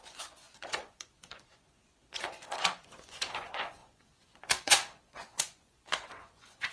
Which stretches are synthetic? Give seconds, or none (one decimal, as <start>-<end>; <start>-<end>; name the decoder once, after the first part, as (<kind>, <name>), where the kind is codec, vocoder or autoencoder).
0.0-6.7 (vocoder, Vocos)